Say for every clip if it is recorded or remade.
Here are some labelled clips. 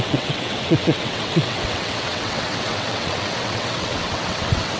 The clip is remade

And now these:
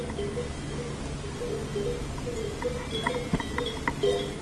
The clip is recorded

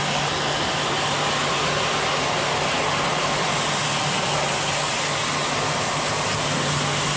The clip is recorded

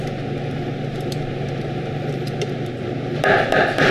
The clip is remade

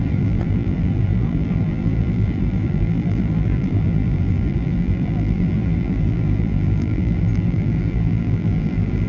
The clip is remade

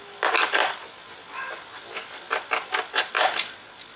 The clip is recorded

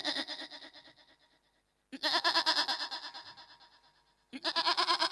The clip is recorded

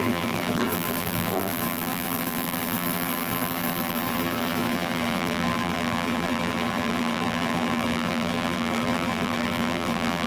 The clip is remade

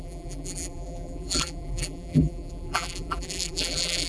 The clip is remade